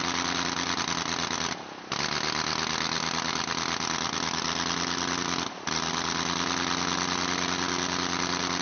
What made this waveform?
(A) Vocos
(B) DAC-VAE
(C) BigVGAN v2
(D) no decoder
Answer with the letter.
D